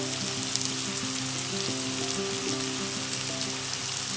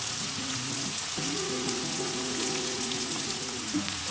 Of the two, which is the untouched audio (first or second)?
first